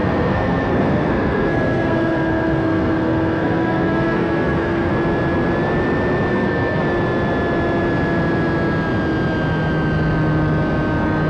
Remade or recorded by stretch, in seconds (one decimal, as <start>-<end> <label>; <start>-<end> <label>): 0.0-4.9 remade; 4.9-6.3 recorded; 6.3-6.8 remade; 6.8-11.3 recorded

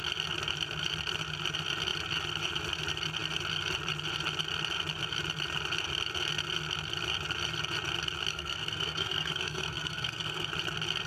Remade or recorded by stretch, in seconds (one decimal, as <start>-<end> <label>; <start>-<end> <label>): 0.0-8.3 recorded; 8.3-10.5 remade; 10.5-11.1 recorded

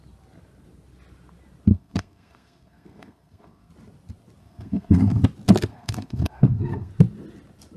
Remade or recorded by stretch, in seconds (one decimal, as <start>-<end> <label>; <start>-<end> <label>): 0.0-1.7 recorded; 1.7-3.7 remade; 3.7-4.4 recorded; 4.4-5.2 remade; 5.2-5.7 recorded; 5.7-6.9 remade; 6.9-7.8 recorded

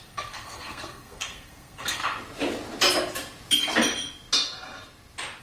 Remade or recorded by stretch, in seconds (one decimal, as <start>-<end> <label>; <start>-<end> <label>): 0.0-2.0 remade; 2.0-5.4 recorded